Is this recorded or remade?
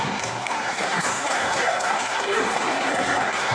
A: remade